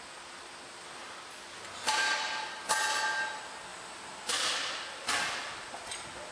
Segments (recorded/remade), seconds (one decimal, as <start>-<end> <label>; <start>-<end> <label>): 0.0-6.3 recorded